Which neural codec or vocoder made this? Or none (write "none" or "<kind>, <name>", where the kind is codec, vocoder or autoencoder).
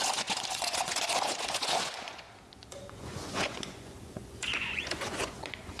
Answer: vocoder, Vocos